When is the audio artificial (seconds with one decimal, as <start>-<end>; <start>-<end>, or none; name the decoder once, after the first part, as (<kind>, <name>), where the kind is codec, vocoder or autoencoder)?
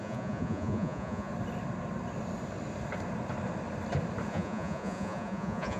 0.0-1.3 (vocoder, Vocos); 4.3-5.8